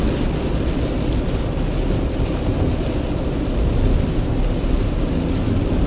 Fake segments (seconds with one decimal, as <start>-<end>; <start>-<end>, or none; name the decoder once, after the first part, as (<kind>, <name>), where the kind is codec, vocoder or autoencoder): none